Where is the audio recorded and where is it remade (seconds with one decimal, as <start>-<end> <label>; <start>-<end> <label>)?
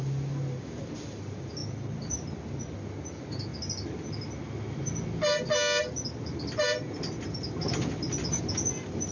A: 0.0-9.1 recorded